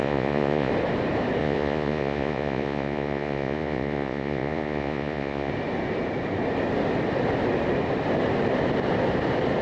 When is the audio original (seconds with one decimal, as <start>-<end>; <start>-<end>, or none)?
0.7-1.4; 5.5-9.6